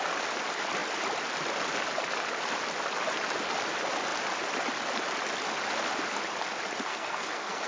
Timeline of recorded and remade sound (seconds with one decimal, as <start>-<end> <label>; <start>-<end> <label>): 0.0-6.9 recorded; 6.9-7.7 remade